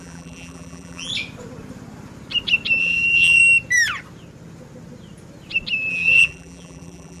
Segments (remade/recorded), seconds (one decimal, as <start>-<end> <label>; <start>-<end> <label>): 0.0-1.1 remade; 1.1-2.8 recorded; 2.8-3.4 remade; 3.4-5.9 recorded; 5.9-7.2 remade

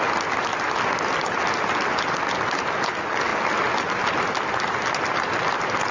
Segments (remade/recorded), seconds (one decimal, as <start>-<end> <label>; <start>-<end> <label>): 0.0-5.9 recorded

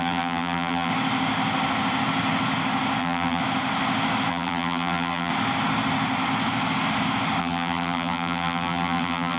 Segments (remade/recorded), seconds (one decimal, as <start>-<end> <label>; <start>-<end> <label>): 0.0-0.9 remade; 0.9-3.0 recorded; 3.0-3.4 remade; 3.4-4.3 recorded; 4.3-5.3 remade; 5.3-7.4 recorded; 7.4-9.4 remade

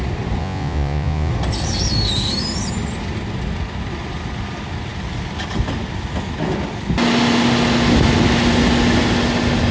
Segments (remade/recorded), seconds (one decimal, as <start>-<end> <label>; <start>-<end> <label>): 0.0-0.4 recorded; 0.4-1.3 remade; 1.3-9.7 recorded